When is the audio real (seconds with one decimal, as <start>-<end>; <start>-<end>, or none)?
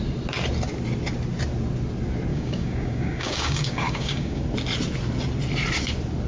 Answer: 0.0-2.3; 4.4-6.3